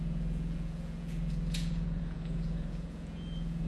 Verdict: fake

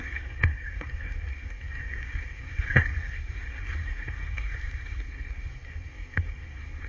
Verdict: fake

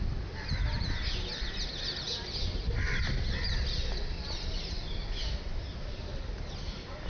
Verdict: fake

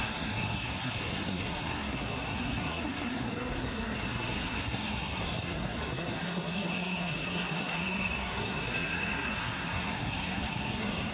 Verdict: fake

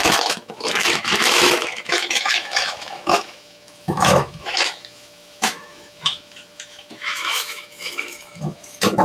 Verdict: fake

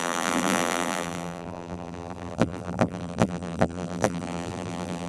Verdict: fake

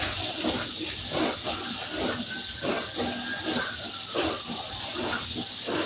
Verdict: real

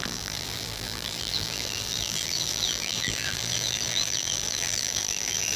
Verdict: fake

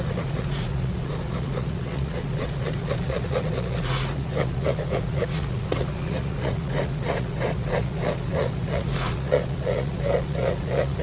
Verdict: fake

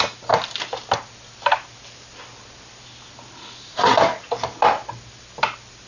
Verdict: real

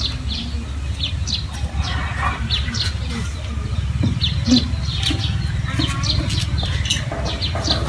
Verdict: real